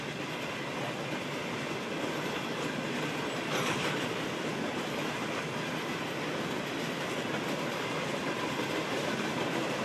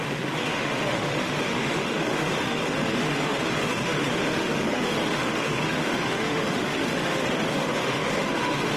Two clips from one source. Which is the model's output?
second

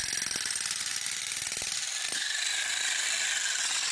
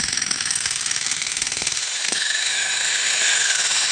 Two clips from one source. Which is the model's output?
second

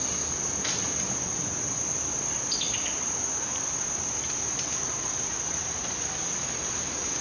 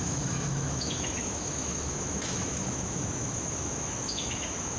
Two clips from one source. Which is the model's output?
second